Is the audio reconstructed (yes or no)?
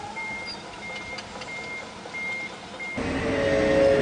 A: no